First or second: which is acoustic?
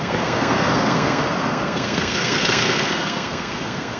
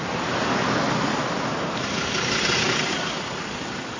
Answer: second